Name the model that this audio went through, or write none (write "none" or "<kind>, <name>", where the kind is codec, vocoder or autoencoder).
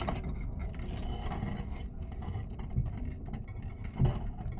none